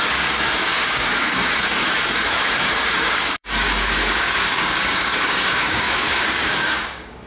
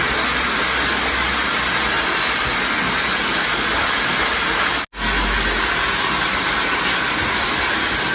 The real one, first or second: second